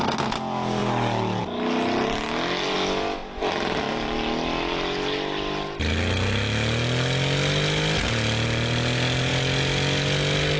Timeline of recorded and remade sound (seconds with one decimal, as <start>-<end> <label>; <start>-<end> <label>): 0.0-10.6 recorded